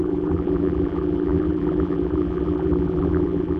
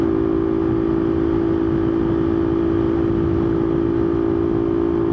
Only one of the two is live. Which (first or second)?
second